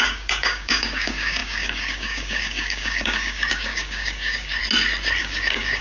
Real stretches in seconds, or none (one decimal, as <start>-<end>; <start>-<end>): 4.6-5.2